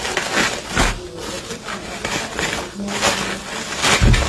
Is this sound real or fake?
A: real